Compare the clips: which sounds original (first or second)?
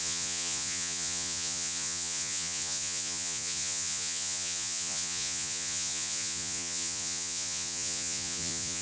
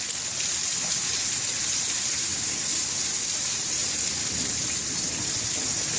second